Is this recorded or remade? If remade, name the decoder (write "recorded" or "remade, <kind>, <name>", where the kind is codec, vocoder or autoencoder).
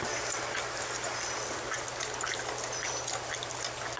recorded